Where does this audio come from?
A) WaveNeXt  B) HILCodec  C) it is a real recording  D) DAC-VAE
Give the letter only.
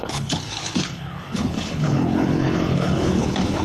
B